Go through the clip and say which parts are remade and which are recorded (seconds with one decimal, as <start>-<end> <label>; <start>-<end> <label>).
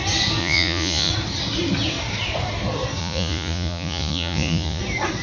0.0-0.4 recorded; 0.4-1.1 remade; 1.1-3.0 recorded; 3.0-4.8 remade; 4.8-5.2 recorded